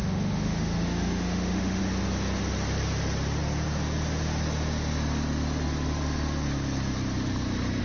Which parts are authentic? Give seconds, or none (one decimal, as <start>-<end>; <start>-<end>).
1.8-7.8